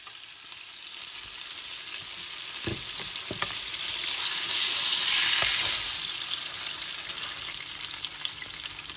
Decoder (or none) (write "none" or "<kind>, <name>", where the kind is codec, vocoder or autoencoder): none